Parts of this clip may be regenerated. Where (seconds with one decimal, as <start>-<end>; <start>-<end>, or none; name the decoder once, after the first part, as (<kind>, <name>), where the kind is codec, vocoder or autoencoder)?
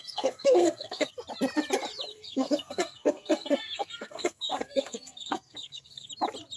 0.0-1.1 (codec, SNAC); 2.1-6.1